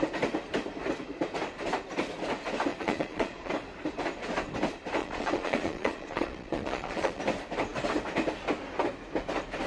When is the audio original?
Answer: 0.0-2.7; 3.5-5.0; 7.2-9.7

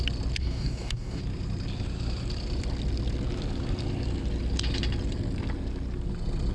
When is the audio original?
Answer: 0.0-0.4; 1.2-6.5

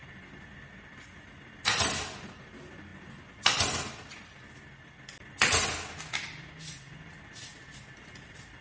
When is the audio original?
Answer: 0.0-8.6